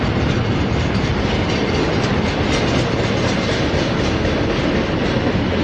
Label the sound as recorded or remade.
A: recorded